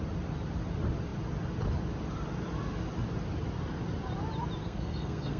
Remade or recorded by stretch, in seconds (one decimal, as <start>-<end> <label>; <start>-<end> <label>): 0.0-4.6 recorded; 4.6-5.4 remade